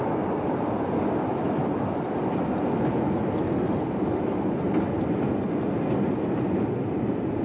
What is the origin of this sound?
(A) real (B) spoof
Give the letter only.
A